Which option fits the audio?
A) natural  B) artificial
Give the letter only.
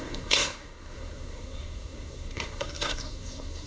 B